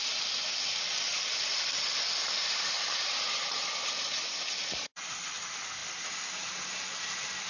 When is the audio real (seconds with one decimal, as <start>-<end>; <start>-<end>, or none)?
0.0-7.5